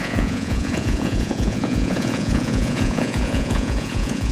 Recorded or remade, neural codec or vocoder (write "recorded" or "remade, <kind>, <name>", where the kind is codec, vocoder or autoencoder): remade, vocoder, Vocos